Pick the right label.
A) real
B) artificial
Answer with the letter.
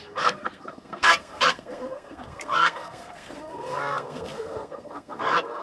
B